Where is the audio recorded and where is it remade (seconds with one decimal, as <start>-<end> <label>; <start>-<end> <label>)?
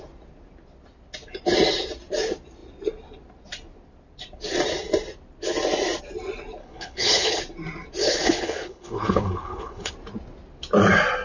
0.0-6.6 recorded; 6.6-7.4 remade; 7.4-8.0 recorded; 8.0-9.9 remade; 9.9-11.2 recorded